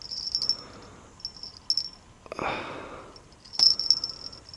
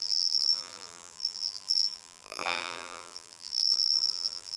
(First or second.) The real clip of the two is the first